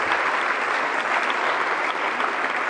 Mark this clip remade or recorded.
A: recorded